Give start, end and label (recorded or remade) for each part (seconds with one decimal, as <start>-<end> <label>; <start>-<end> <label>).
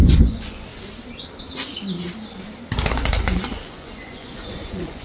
0.0-0.7 remade; 0.7-2.9 recorded; 2.9-5.0 remade